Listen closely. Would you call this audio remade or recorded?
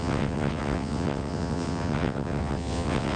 remade